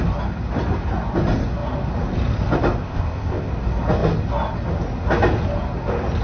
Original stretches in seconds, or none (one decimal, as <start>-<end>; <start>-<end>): 0.0-2.8; 3.5-6.2